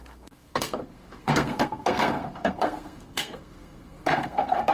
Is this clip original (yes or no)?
no